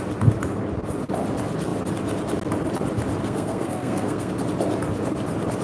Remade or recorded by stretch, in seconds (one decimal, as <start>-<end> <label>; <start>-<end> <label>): 0.0-3.2 recorded; 3.2-4.3 remade; 4.3-5.6 recorded